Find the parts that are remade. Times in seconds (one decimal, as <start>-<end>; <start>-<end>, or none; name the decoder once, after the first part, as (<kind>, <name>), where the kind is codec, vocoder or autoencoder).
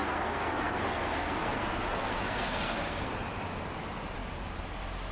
0.0-3.1 (codec, SNAC)